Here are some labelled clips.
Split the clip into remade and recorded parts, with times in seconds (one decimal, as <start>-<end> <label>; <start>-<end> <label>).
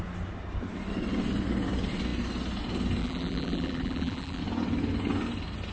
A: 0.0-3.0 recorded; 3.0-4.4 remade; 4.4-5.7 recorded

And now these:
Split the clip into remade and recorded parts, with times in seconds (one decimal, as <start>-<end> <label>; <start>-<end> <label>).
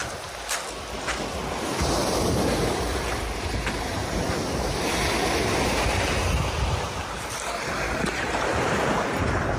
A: 0.0-2.4 recorded; 2.4-4.0 remade; 4.0-7.6 recorded; 7.6-9.6 remade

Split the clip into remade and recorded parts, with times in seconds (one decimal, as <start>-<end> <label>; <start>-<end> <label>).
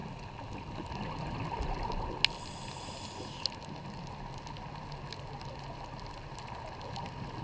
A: 0.0-7.4 recorded